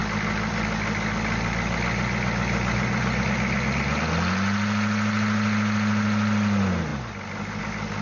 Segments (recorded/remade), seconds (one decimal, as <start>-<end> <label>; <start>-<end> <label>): 0.0-8.0 recorded